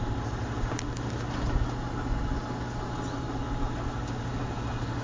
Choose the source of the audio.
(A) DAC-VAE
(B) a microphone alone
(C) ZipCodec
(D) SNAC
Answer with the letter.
B